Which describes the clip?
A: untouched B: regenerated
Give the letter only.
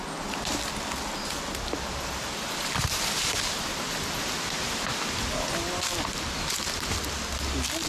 A